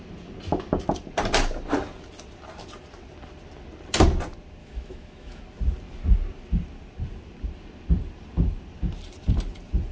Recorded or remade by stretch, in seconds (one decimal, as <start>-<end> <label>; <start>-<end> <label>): 0.0-4.6 recorded; 4.6-5.4 remade; 5.4-9.9 recorded